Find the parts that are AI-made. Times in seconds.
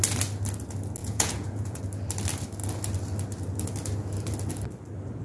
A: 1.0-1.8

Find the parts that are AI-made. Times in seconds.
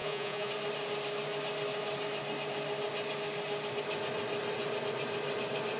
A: 0.0-0.5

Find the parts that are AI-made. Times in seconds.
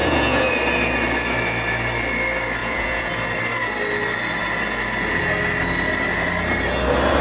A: 0.0-0.5; 2.6-3.1